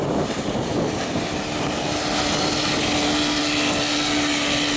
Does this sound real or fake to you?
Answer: real